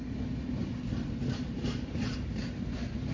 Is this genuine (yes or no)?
yes